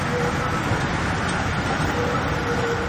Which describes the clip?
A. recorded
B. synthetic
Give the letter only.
A